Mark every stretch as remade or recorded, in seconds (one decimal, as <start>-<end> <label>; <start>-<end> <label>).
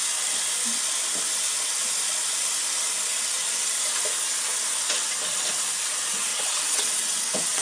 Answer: 0.0-6.3 recorded; 6.3-7.6 remade